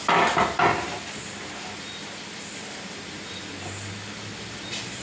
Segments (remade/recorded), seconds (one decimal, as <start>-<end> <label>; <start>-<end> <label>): 0.0-5.0 recorded